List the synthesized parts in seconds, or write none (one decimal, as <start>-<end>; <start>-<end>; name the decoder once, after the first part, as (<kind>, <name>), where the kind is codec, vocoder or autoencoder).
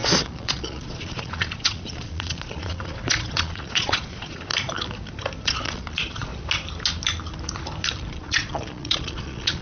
0.0-4.5 (vocoder, Vocos); 5.4-6.3; 8.1-9.6